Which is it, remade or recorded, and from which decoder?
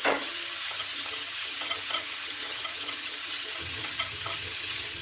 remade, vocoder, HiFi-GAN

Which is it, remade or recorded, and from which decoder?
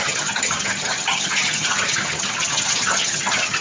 remade, vocoder, HiFi-GAN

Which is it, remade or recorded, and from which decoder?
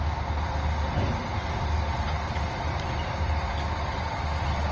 recorded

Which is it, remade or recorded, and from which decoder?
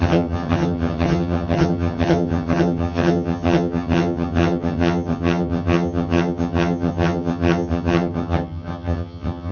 remade, vocoder, HiFi-GAN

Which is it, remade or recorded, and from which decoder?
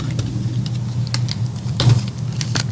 recorded